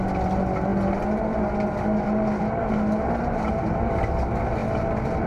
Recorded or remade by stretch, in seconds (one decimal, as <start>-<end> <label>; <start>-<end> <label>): 0.0-5.3 recorded